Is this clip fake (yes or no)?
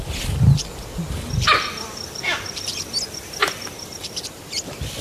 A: no